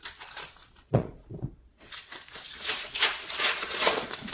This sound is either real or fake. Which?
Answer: fake